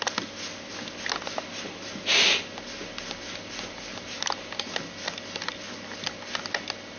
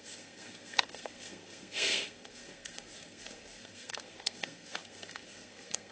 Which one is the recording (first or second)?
first